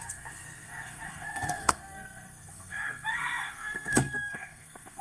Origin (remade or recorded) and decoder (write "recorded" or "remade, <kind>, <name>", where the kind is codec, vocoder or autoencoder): remade, codec, SNAC